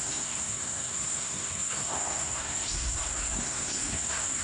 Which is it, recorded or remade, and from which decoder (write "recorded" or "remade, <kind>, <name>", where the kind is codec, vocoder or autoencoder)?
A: remade, codec, SNAC